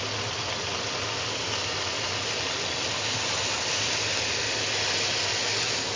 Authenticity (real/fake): real